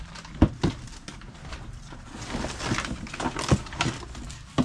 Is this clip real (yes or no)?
yes